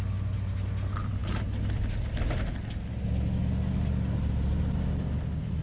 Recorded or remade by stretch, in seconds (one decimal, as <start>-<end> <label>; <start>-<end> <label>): 0.0-5.6 recorded